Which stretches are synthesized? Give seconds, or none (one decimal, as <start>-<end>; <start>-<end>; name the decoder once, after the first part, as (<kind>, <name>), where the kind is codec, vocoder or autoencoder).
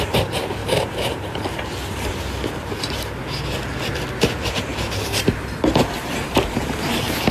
0.6-1.7 (vocoder, BigVGAN v2); 4.7-7.3